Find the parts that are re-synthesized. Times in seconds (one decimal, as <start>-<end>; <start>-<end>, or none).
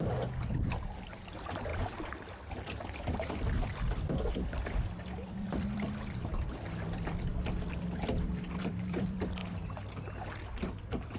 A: 0.0-1.7; 5.0-7.3; 7.8-9.4